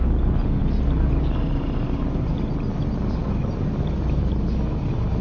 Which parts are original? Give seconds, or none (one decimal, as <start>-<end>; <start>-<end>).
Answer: 0.0-5.2